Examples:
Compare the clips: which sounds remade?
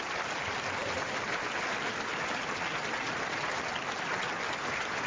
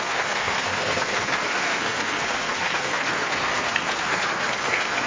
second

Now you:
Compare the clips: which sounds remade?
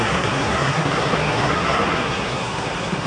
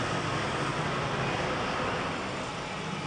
first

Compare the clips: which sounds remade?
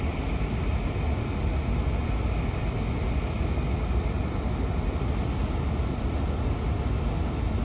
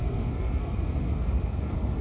second